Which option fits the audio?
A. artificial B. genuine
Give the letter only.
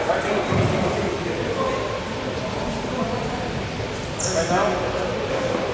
B